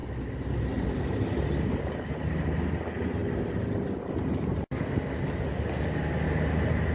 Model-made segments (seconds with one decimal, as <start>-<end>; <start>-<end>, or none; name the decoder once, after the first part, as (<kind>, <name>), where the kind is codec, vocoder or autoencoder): none